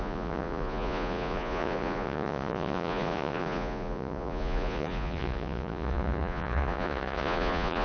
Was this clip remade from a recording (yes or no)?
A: yes